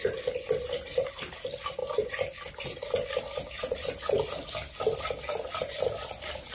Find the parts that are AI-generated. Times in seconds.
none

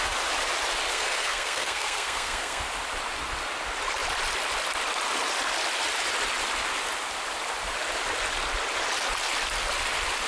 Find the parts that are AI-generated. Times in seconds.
0.9-2.6 (codec, SNAC)

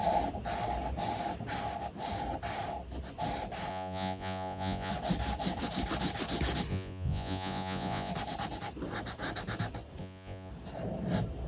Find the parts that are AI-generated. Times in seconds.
3.7-4.9 (vocoder, Vocos); 6.7-8.1; 10.0-10.5

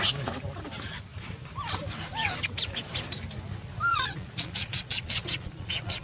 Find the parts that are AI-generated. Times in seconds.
3.9-6.0 (vocoder, Vocos)

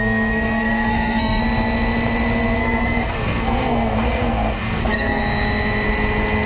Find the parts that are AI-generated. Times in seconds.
0.0-1.4 (codec, SNAC); 2.6-5.2

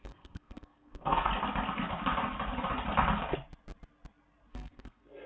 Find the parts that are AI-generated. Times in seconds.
0.0-1.3 (codec, SNAC); 4.5-5.3

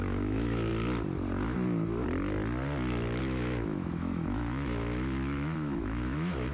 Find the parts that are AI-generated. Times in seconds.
0.0-0.7 (autoencoder, DAC-VAE); 3.2-6.5